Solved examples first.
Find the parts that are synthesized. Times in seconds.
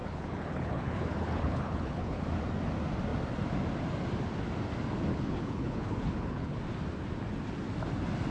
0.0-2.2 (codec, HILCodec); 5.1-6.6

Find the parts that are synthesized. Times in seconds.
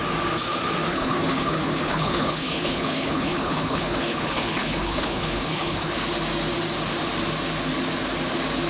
0.9-5.9 (codec, HILCodec)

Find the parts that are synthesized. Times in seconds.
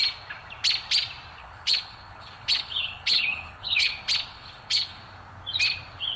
1.4-3.9 (codec, HILCodec); 4.3-5.0